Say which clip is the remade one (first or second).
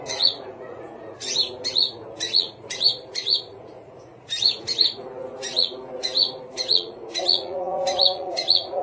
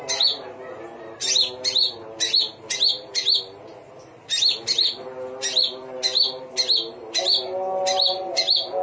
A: first